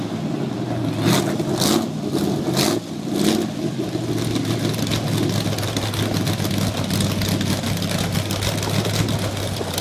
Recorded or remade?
recorded